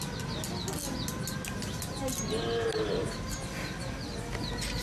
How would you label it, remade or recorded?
recorded